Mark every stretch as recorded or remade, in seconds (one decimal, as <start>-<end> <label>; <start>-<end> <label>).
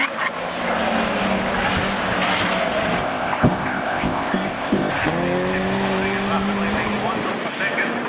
0.0-3.0 recorded; 3.0-4.9 remade; 4.9-8.1 recorded